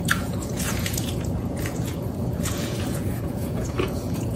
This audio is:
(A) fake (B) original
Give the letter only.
A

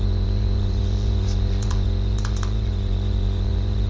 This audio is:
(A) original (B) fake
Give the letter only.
B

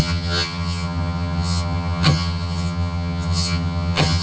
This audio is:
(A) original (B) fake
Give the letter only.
B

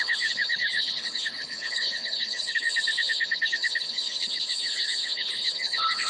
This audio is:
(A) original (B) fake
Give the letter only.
B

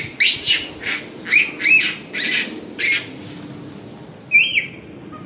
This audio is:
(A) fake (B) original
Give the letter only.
B